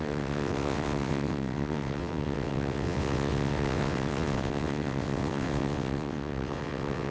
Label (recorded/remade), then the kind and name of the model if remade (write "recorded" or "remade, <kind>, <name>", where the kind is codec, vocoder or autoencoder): remade, vocoder, WaveNeXt